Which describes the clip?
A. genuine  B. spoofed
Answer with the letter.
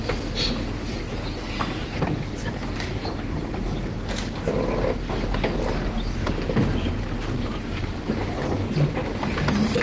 A